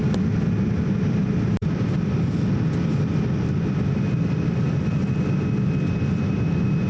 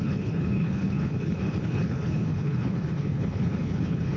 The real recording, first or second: first